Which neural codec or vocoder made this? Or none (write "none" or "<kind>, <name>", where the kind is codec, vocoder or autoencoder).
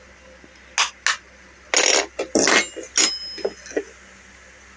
none